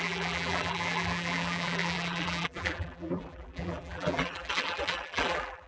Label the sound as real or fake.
fake